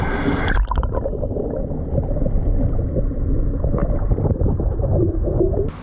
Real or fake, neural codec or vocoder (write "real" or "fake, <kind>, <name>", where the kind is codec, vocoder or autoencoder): real